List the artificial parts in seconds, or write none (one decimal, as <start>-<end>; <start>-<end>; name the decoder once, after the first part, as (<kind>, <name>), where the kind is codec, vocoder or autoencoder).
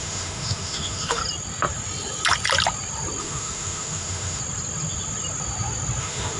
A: 0.0-1.2 (autoencoder, DAC-VAE); 3.2-4.4; 6.0-6.4